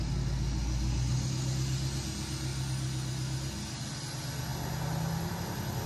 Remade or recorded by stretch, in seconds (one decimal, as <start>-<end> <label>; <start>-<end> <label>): 0.0-5.9 recorded